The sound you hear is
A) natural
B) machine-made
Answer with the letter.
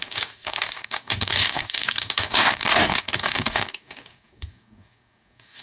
B